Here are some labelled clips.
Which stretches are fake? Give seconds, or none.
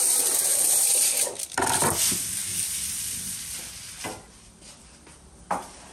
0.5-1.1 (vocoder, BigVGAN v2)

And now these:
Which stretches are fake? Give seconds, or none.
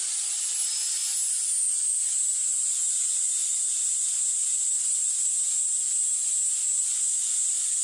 0.0-1.0 (vocoder, BigVGAN v2); 1.6-6.2; 6.8-7.8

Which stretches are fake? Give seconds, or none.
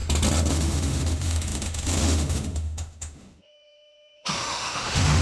0.5-5.2 (autoencoder, DAC-VAE)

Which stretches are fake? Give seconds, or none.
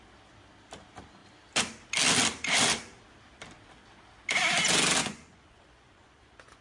5.0-6.6 (vocoder, Vocos)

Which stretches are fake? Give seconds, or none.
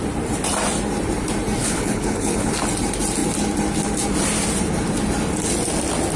1.6-2.5 (codec, HILCodec)